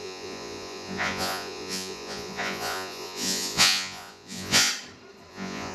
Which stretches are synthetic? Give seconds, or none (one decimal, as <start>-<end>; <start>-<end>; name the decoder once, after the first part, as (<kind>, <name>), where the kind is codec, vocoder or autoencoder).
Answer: 0.0-4.7 (vocoder, Vocos); 5.3-5.7